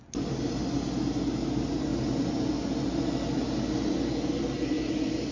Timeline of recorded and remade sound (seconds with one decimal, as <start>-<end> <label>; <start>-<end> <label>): 0.0-5.3 recorded